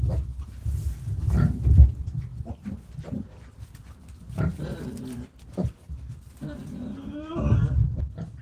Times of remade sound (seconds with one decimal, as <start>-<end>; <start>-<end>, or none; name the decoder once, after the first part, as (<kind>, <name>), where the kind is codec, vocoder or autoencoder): none